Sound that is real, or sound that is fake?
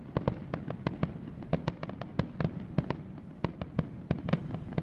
real